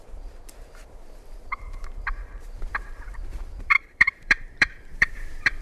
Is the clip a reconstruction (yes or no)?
yes